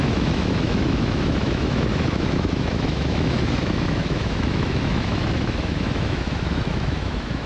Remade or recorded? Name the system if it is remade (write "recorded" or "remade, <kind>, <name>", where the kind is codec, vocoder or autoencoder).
remade, autoencoder, DAC-VAE